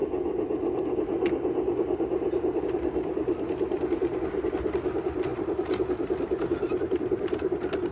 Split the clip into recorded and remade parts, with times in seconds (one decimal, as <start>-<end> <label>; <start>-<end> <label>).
0.0-7.9 recorded